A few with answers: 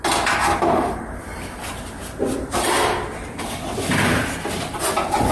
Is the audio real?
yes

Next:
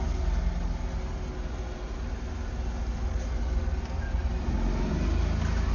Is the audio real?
yes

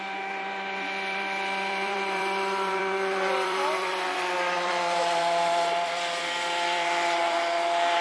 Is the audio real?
no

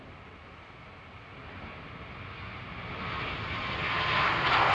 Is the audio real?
yes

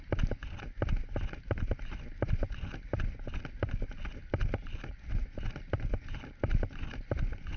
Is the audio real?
yes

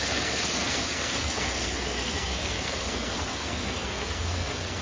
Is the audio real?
no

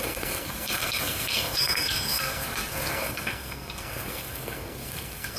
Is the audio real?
no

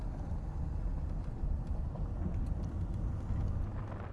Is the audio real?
yes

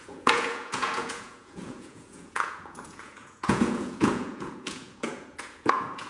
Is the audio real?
no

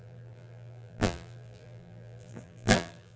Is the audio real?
no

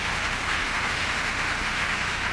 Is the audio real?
no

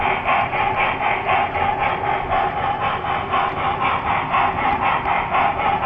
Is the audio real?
yes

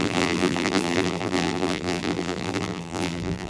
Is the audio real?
no